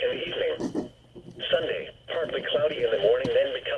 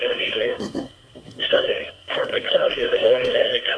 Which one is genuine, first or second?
first